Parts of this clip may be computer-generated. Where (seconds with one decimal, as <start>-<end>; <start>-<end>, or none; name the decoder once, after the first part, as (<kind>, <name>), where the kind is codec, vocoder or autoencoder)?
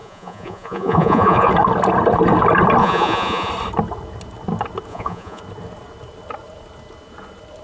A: 0.0-1.5 (vocoder, Vocos); 2.8-3.5; 4.9-5.4